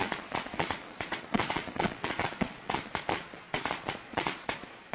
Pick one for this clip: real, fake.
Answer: fake